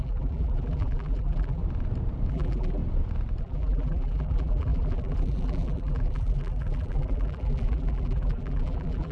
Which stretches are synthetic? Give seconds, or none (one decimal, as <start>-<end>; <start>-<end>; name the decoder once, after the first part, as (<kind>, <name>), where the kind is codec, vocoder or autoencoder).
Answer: 0.0-1.6 (vocoder, BigVGAN v2); 2.3-2.8; 3.4-9.1